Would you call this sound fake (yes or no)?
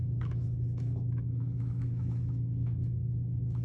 yes